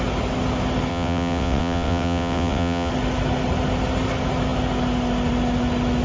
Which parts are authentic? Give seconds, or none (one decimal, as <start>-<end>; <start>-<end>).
0.0-0.9; 2.9-6.0